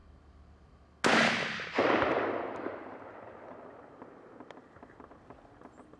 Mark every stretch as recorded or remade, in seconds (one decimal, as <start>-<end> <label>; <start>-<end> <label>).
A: 0.0-6.0 recorded